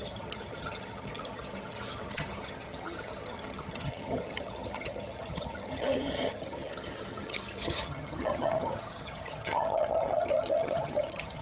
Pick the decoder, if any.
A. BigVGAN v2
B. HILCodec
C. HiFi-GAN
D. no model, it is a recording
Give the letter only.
C